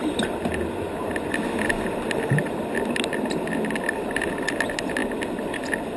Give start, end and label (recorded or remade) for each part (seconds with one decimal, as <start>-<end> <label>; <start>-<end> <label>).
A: 0.0-6.0 recorded